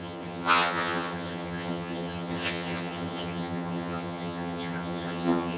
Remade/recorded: remade